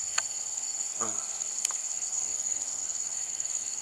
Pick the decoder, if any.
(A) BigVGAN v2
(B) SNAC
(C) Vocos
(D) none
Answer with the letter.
B